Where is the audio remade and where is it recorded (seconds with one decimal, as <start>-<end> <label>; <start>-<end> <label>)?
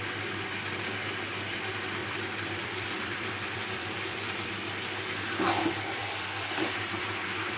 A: 0.0-2.0 recorded; 2.0-4.5 remade; 4.5-6.0 recorded; 6.0-7.6 remade